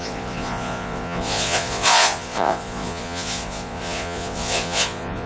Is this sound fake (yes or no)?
yes